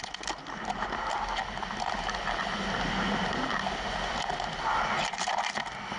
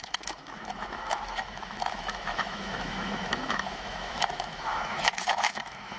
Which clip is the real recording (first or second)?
first